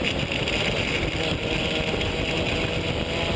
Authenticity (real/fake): real